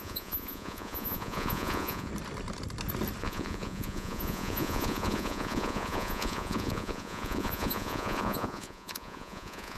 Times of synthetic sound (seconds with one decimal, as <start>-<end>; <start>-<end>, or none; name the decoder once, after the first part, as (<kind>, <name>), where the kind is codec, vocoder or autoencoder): 0.0-2.1 (vocoder, Vocos); 3.2-9.8